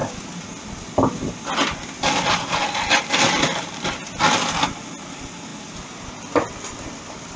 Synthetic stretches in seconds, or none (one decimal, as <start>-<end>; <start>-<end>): none